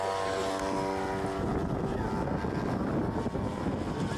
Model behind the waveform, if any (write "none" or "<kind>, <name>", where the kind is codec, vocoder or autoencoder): none